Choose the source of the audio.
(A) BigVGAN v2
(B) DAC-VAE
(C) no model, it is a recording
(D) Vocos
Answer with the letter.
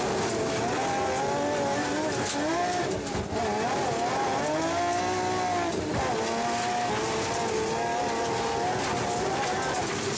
C